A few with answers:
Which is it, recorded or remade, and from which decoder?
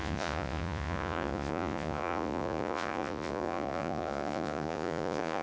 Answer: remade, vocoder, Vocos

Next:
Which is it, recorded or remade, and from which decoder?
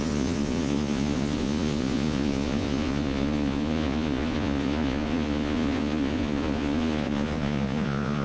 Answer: remade, vocoder, Vocos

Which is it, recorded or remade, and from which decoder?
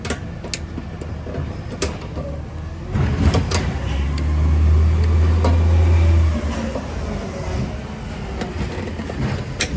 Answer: recorded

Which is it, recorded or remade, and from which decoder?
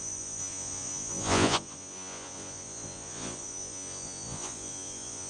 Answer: remade, vocoder, Vocos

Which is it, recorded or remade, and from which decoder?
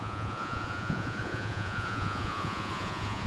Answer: remade, vocoder, Vocos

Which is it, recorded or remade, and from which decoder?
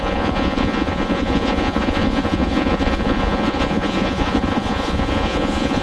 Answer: remade, vocoder, Vocos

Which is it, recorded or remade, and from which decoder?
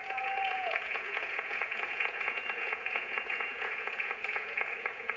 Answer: remade, vocoder, Vocos